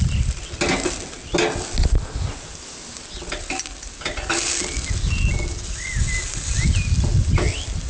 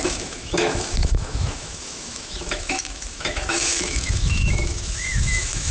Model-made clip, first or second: second